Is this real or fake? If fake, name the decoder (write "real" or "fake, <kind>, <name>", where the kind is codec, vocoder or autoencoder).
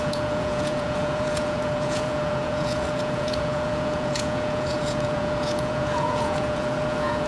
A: fake, vocoder, Vocos